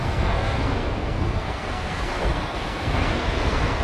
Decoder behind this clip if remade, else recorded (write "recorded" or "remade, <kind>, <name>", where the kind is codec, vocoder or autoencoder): remade, codec, SNAC